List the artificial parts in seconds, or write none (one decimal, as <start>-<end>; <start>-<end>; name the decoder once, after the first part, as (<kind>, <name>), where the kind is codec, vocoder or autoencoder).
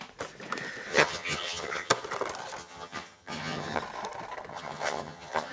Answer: 0.9-1.9 (vocoder, HiFi-GAN); 2.6-3.8; 4.5-5.5